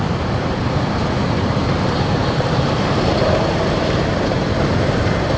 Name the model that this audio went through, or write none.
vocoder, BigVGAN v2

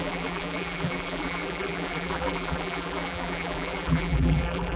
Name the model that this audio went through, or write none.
vocoder, BigVGAN v2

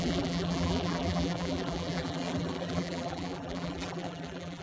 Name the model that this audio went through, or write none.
vocoder, BigVGAN v2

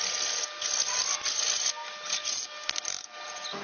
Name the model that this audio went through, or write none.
none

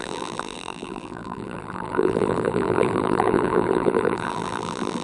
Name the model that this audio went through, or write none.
vocoder, BigVGAN v2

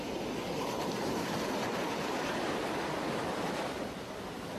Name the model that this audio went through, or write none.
none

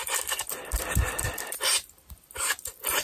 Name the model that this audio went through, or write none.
vocoder, BigVGAN v2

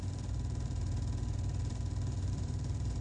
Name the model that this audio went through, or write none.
vocoder, BigVGAN v2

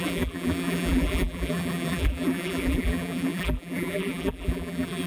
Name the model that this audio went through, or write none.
vocoder, BigVGAN v2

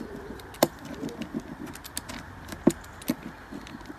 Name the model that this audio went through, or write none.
vocoder, BigVGAN v2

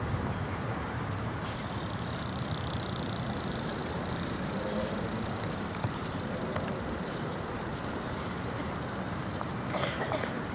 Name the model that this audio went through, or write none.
vocoder, BigVGAN v2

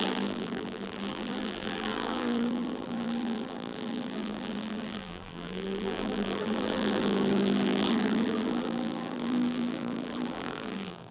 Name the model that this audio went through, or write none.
vocoder, BigVGAN v2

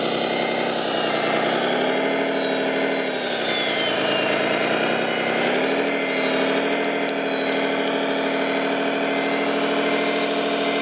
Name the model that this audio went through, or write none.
none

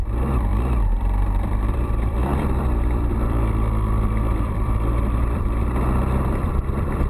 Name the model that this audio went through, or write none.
vocoder, BigVGAN v2